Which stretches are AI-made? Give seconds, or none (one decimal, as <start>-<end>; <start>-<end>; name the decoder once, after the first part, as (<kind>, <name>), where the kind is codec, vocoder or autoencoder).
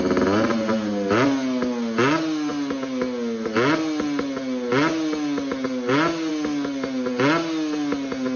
none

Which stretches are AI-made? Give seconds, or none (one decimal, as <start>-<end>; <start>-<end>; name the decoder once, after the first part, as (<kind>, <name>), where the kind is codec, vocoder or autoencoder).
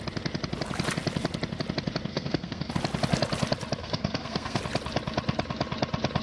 2.1-2.7 (codec, SNAC); 3.8-4.6